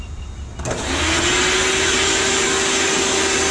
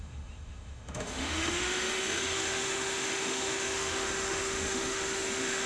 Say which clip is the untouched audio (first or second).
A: first